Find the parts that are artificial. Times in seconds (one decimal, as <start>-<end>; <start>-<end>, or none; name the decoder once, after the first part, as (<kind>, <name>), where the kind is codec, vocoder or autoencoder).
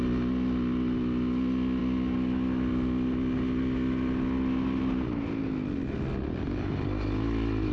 none